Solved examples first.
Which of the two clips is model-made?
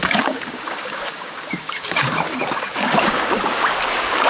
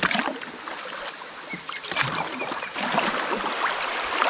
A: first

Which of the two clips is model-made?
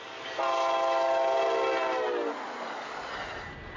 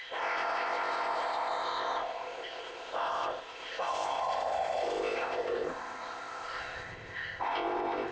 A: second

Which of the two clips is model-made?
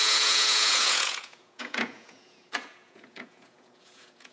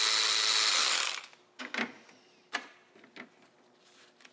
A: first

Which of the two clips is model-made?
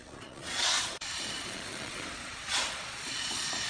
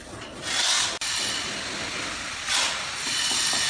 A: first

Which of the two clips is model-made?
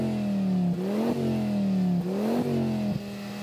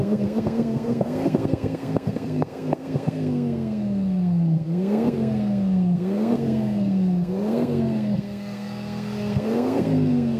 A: second